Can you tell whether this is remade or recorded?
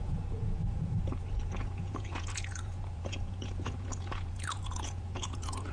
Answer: remade